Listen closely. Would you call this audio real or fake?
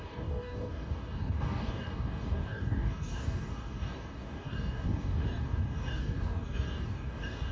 fake